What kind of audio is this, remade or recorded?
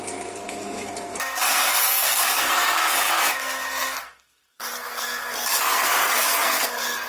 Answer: remade